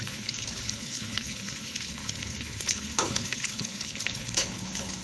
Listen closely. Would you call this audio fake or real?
fake